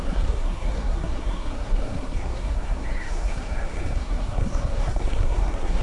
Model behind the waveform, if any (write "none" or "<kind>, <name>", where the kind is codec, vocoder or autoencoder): codec, SNAC